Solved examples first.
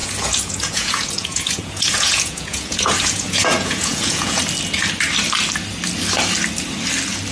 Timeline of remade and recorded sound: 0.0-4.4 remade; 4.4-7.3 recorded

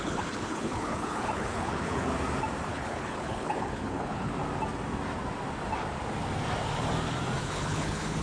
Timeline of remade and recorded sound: 0.0-2.1 remade; 2.1-2.7 recorded; 2.7-4.3 remade; 4.3-7.4 recorded; 7.4-8.2 remade

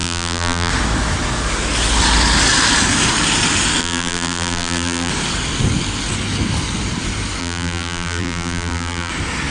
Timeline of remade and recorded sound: 0.0-0.7 remade; 0.7-3.8 recorded; 3.8-5.1 remade; 5.1-7.4 recorded; 7.4-9.1 remade; 9.1-9.5 recorded